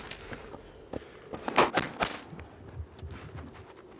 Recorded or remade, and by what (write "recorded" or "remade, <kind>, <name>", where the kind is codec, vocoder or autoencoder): recorded